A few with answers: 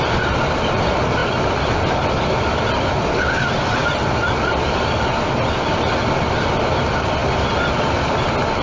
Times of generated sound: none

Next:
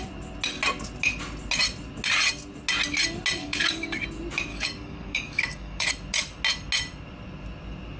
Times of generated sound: 3.4-4.0 (codec, DAC); 4.5-5.9

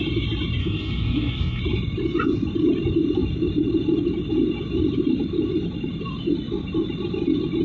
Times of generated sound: 0.6-1.6 (codec, DAC)

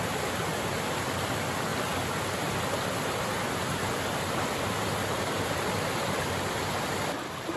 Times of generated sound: none

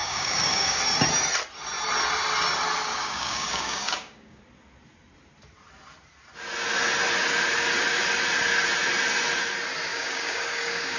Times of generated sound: 0.0-0.8 (codec, DAC); 2.9-4.4; 9.9-11.0

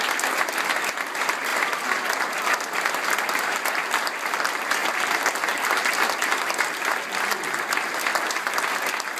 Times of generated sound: none

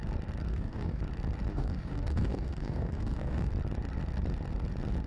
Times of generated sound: 0.5-1.0 (codec, DAC); 1.5-3.5

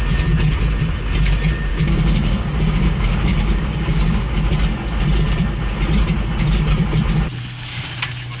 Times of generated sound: 1.7-4.4 (codec, DAC)